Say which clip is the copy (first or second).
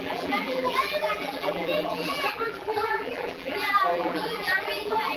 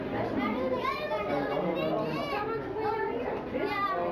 first